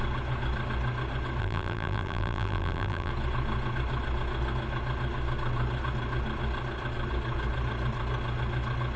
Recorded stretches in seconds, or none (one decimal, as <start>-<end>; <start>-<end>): 0.0-1.4; 3.1-9.0